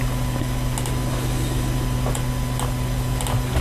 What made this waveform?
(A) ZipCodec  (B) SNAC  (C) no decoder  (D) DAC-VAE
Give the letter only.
C